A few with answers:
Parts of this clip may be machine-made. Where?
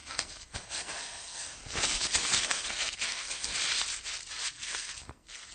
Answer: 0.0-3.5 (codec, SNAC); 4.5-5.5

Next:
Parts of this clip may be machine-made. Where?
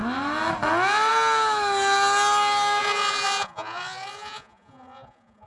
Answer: 2.8-5.5 (vocoder, Vocos)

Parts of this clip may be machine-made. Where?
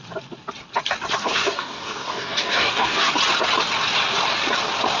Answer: 1.2-3.1 (codec, DAC)